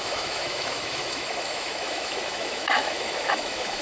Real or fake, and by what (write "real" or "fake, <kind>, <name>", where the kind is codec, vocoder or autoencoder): fake, autoencoder, DAC-VAE